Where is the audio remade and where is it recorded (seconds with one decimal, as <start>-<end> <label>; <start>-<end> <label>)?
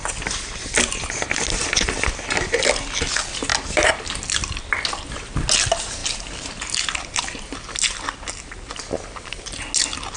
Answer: 0.0-10.2 recorded